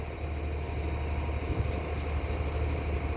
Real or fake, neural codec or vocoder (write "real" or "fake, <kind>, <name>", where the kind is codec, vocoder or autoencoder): real